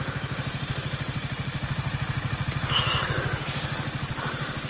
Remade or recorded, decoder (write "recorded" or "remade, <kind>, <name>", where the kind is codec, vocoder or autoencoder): recorded